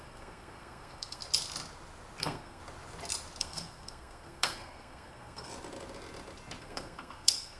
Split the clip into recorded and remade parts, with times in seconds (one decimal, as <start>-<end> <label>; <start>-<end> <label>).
0.0-1.2 remade; 1.2-2.2 recorded; 2.2-2.6 remade; 2.6-3.4 recorded; 3.4-5.5 remade; 5.5-6.6 recorded; 6.6-7.6 remade